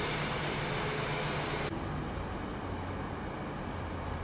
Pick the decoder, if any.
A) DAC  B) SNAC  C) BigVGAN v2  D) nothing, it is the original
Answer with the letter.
D